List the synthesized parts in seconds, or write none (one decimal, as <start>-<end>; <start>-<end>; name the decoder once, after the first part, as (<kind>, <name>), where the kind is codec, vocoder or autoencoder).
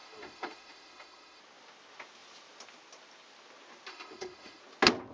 0.0-1.4 (autoencoder, DAC-VAE); 3.9-4.6